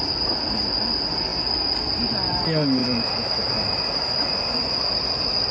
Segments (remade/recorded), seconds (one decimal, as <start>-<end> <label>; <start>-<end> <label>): 0.0-2.8 recorded; 2.8-4.7 remade; 4.7-5.5 recorded